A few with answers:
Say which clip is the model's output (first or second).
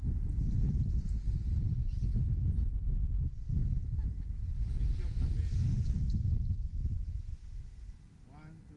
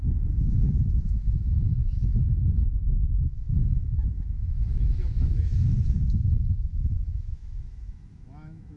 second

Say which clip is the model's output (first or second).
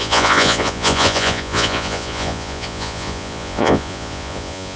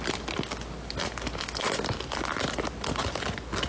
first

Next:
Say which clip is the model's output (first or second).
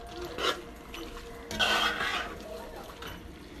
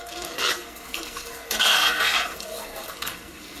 second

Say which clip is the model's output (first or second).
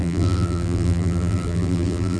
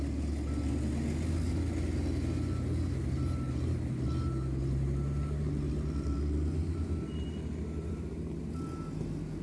first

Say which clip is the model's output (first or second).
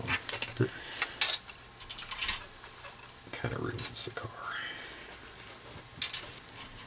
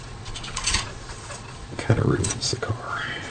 second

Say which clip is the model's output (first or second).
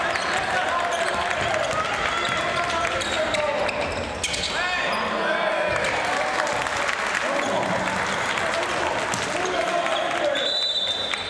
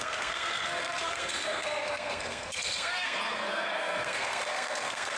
second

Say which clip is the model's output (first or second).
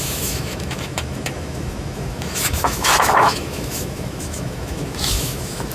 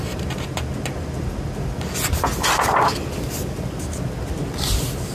first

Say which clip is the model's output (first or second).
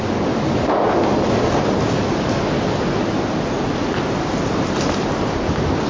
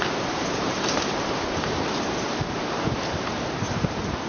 second